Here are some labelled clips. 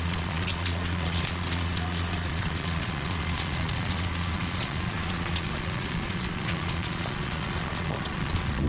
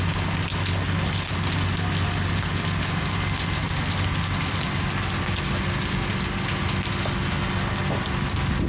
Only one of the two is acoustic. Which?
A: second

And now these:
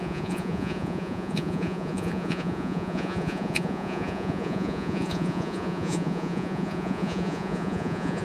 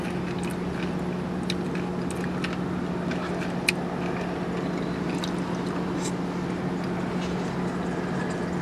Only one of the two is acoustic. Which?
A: second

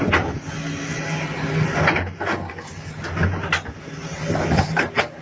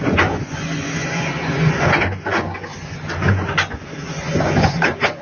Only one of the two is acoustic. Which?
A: first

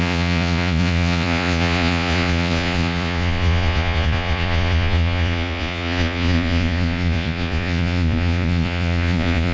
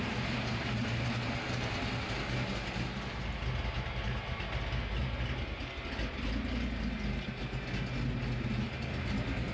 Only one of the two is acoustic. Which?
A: second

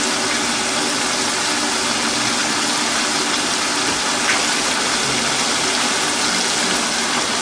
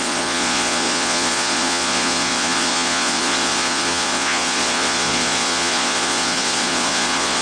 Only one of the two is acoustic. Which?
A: first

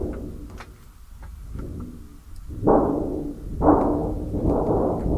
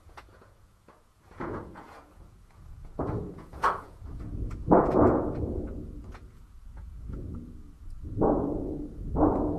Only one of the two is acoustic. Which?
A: first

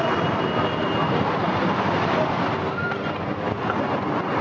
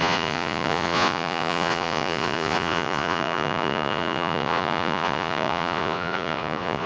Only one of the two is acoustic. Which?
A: first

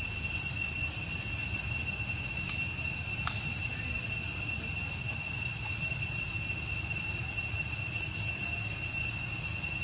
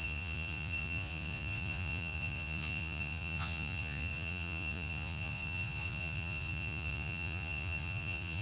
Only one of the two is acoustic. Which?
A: first